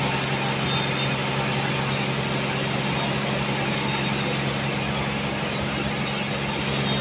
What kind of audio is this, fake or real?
real